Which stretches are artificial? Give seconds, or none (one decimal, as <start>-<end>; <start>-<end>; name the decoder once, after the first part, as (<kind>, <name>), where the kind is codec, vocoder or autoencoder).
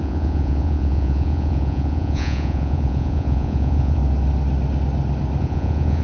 0.0-4.0 (vocoder, Vocos); 5.4-6.0